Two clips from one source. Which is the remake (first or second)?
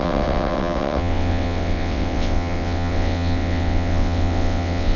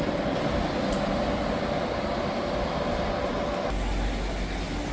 first